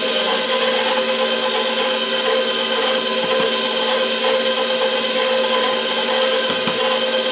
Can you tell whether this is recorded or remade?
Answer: recorded